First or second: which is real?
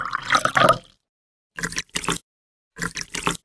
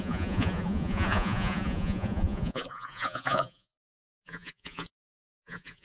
first